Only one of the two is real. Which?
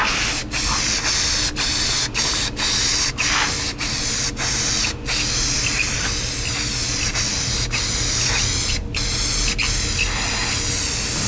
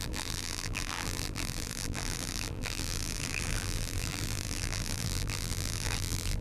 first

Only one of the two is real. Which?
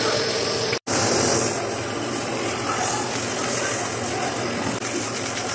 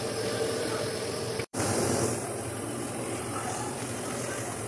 first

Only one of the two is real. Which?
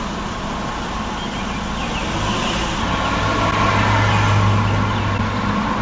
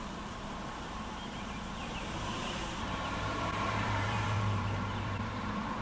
first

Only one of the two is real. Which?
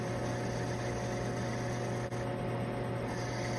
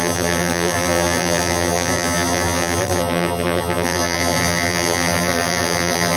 first